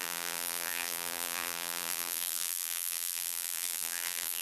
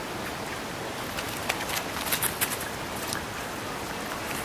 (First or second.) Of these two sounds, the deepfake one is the first